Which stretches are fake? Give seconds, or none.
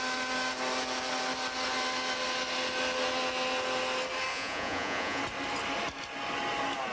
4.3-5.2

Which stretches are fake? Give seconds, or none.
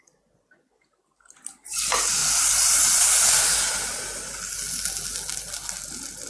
none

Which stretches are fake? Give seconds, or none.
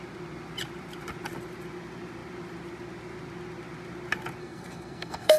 4.4-5.4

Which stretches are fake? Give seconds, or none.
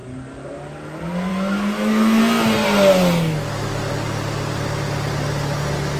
1.3-2.2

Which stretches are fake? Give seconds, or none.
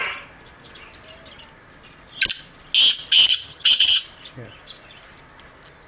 3.3-4.0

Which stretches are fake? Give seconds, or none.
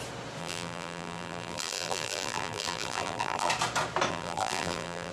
0.4-3.5; 4.1-5.1